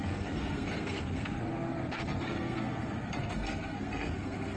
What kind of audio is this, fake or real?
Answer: fake